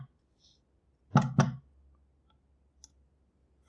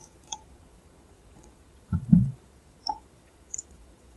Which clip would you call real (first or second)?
first